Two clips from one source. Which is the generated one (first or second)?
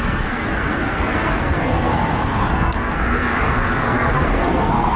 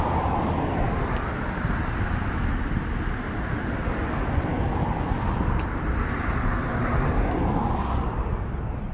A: first